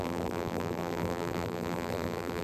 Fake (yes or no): yes